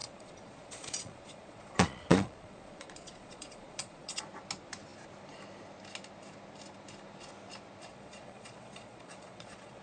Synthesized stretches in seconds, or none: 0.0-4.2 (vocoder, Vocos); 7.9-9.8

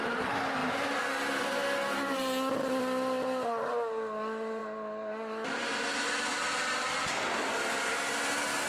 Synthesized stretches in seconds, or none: none

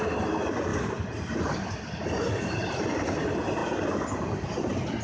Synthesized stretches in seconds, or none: none